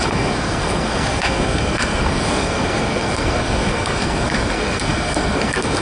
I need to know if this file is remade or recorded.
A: remade